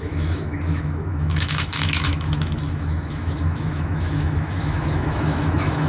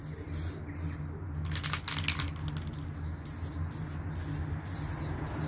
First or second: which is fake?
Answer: first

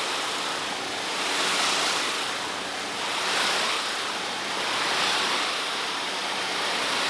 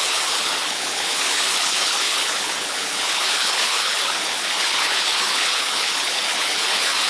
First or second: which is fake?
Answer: second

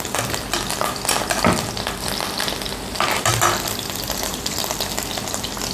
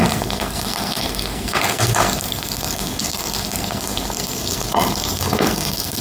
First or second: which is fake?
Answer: second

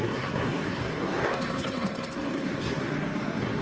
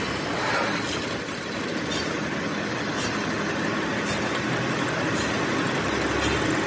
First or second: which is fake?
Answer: first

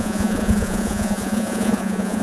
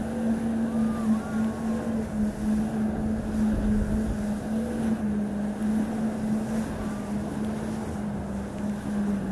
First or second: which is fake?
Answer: first